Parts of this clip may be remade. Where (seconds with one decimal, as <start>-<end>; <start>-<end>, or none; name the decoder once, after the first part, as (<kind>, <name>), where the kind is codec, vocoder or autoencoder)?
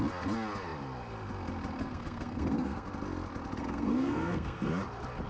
1.8-2.9 (codec, SNAC); 3.6-4.7